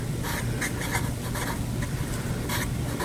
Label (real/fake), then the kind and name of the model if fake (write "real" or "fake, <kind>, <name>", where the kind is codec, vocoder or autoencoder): real